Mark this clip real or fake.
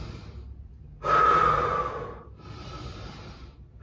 real